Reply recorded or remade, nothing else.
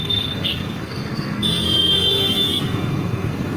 remade